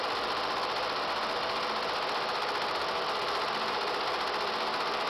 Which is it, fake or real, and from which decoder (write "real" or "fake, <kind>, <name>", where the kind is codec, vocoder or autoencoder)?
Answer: real